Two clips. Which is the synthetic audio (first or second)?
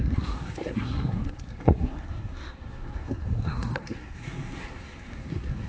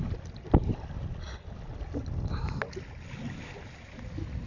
first